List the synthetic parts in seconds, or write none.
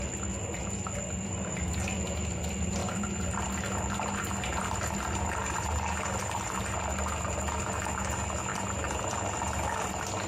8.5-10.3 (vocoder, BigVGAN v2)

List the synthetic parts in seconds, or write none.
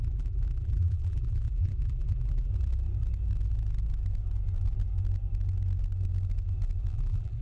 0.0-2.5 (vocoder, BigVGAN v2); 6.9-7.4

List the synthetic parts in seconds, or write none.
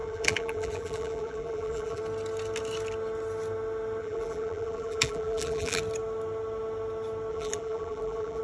0.0-2.0 (vocoder, BigVGAN v2); 4.0-5.8; 7.3-8.4